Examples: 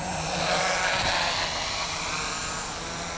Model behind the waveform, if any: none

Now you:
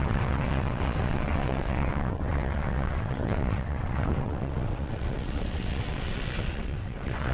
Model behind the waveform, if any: vocoder, WaveNeXt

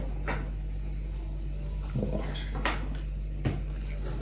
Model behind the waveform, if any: none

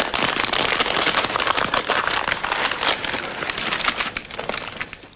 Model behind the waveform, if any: none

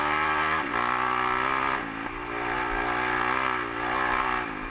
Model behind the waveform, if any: none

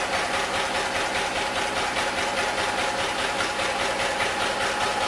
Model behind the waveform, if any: none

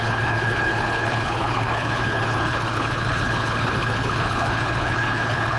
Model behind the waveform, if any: codec, HILCodec